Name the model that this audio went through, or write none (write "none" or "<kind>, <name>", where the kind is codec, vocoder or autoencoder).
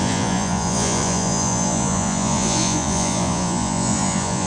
vocoder, Vocos